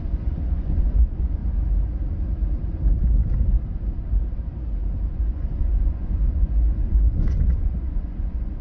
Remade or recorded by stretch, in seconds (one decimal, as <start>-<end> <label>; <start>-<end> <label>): 0.0-1.4 remade; 1.4-5.1 recorded; 5.1-8.6 remade